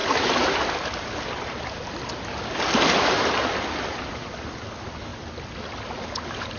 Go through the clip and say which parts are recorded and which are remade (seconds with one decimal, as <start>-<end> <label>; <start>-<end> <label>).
0.0-6.6 recorded